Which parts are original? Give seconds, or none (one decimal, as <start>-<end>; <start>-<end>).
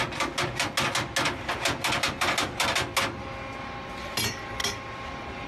0.0-5.5